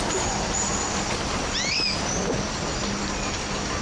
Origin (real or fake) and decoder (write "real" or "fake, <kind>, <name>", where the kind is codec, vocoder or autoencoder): real